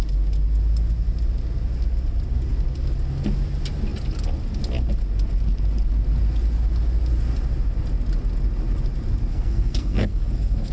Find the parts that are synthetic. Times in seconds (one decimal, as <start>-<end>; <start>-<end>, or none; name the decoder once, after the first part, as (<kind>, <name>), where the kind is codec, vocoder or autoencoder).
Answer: 9.3-10.7 (codec, SNAC)